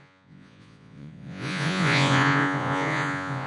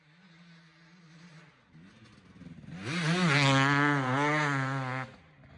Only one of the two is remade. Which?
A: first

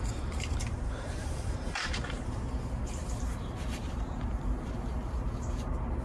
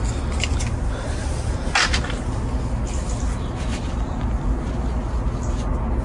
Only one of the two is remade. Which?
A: first